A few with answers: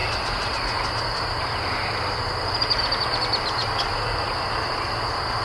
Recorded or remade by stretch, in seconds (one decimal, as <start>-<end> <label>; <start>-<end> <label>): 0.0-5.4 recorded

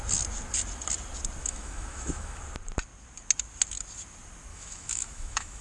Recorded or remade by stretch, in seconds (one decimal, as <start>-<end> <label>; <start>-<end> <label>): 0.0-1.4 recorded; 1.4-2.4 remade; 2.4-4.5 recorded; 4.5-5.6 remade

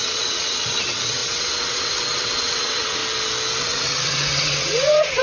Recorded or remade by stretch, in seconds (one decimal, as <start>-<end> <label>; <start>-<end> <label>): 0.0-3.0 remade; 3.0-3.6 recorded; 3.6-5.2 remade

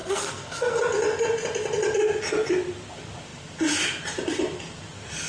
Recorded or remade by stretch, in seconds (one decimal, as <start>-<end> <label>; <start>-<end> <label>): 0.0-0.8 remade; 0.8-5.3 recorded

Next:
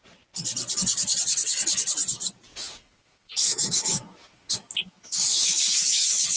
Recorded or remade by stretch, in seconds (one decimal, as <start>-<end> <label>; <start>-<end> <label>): 0.0-2.5 recorded; 2.5-6.4 remade

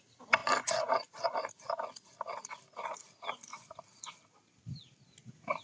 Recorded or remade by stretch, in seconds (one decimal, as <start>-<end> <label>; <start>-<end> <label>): 0.0-5.6 recorded

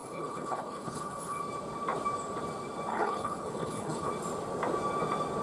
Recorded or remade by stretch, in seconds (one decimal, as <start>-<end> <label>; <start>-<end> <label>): 0.0-1.4 remade; 1.4-2.9 recorded; 2.9-4.1 remade; 4.1-5.4 recorded